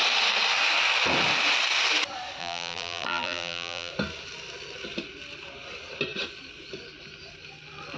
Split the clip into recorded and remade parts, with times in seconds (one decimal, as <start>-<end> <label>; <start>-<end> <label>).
0.0-2.4 recorded; 2.4-3.9 remade; 3.9-8.0 recorded